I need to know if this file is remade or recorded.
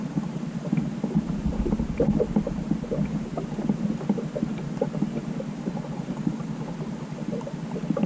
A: recorded